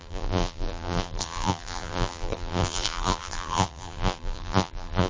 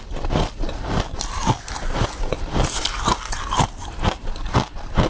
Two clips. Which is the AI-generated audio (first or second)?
first